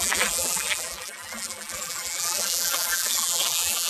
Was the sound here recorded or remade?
remade